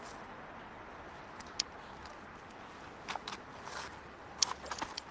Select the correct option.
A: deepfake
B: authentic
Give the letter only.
B